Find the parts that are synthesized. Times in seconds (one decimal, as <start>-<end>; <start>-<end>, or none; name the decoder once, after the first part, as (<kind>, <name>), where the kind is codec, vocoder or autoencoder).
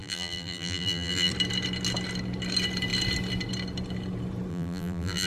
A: 0.0-1.3 (vocoder, BigVGAN v2); 4.5-5.3